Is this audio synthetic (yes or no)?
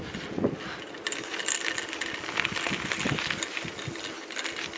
no